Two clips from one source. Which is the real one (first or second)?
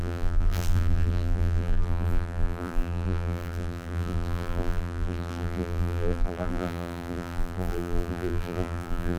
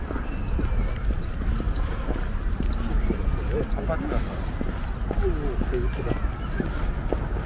second